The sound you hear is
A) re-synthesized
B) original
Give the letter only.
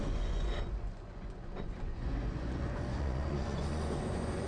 A